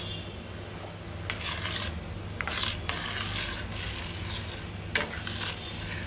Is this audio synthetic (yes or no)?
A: no